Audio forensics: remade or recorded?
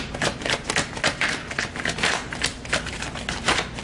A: recorded